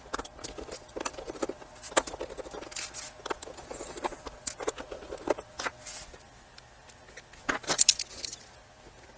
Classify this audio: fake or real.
real